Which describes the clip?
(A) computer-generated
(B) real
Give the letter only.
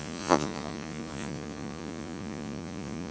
A